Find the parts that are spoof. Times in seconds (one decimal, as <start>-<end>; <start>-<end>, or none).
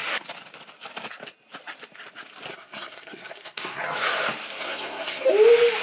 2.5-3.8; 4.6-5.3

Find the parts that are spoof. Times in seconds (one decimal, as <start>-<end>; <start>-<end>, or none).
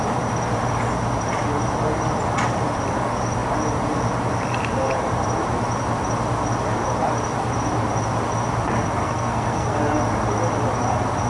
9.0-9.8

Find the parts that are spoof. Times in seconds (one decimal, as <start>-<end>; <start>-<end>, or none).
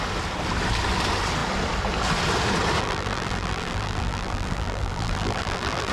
2.8-5.9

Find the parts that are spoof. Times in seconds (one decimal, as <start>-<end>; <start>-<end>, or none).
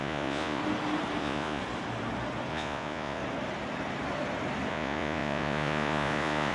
0.0-0.6; 1.2-1.6; 2.5-3.2; 4.7-6.5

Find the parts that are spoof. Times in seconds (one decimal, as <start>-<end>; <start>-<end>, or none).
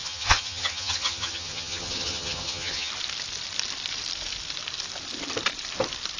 0.0-2.9